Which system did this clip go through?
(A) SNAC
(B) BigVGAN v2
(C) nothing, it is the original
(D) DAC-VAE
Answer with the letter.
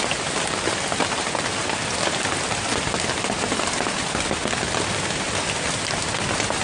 C